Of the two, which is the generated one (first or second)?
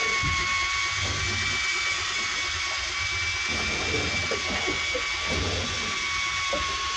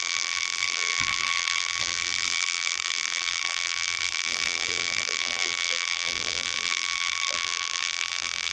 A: second